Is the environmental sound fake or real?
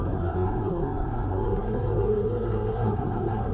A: fake